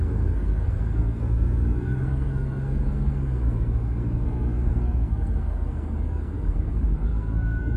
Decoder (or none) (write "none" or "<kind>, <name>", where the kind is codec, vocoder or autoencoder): codec, SNAC